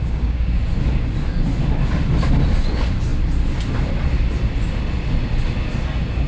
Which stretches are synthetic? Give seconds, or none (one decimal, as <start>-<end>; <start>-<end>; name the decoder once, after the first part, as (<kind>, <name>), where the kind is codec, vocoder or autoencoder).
0.0-0.6 (codec, DAC)

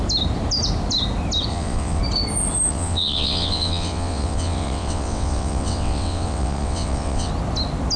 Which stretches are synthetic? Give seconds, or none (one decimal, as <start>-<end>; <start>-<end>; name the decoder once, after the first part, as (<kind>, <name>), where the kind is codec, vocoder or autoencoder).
1.5-2.0 (vocoder, WaveNeXt); 2.7-7.3

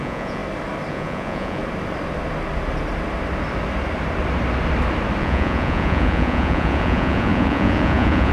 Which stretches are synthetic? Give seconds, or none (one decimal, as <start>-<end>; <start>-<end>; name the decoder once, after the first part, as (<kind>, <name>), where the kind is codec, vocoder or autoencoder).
0.0-0.4 (vocoder, Vocos); 0.9-1.6; 5.2-8.3

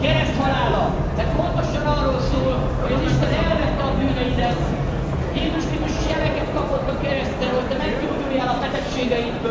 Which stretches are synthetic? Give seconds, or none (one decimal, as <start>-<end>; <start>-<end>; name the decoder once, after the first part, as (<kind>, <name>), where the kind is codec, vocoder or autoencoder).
8.0-8.7 (vocoder, BigVGAN v2)

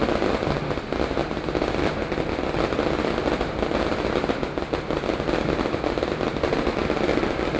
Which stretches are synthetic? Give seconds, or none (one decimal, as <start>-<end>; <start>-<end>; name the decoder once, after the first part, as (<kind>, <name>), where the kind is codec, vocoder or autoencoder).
none

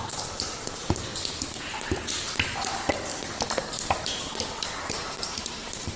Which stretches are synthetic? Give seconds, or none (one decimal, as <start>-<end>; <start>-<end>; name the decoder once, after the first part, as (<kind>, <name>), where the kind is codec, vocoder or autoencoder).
0.0-1.1 (vocoder, BigVGAN v2); 2.2-3.1; 5.0-6.0

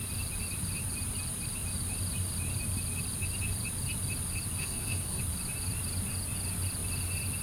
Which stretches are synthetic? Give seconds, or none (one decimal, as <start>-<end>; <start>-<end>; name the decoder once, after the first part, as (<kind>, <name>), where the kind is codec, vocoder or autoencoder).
4.6-5.2 (codec, SNAC)

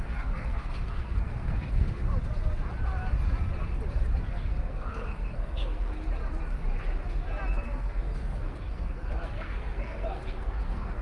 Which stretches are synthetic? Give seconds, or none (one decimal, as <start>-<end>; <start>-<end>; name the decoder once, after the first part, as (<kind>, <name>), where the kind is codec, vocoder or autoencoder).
0.0-2.1 (codec, SNAC); 4.3-5.9; 7.5-11.0